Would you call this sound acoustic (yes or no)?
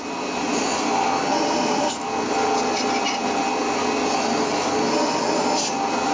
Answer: yes